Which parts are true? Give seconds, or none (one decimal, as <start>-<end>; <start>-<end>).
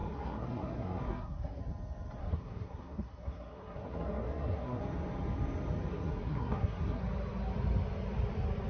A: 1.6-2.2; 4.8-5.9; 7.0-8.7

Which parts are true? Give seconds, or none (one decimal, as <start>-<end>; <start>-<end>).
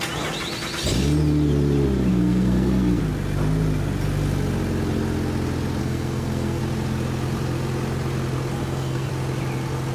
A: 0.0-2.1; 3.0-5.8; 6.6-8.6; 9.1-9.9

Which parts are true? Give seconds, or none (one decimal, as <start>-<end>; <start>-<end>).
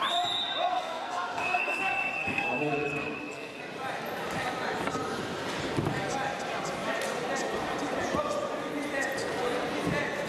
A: 0.0-0.7; 3.6-10.3